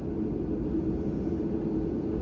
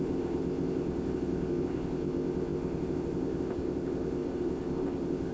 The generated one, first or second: second